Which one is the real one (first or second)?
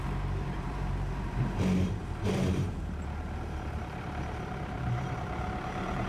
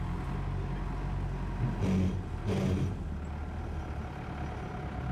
second